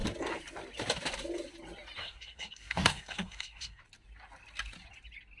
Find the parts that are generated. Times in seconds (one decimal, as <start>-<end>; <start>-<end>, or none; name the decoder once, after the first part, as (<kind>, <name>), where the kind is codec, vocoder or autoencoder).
2.0-3.8 (codec, SNAC)